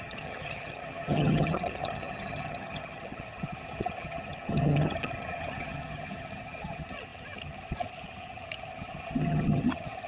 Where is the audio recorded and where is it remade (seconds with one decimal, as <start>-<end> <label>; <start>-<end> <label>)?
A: 0.0-10.1 remade